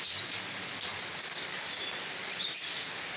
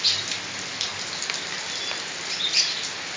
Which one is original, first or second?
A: second